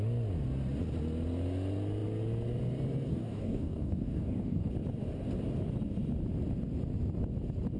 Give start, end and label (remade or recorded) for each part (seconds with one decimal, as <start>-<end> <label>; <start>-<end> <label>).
0.0-3.1 recorded; 3.1-4.7 remade; 4.7-7.8 recorded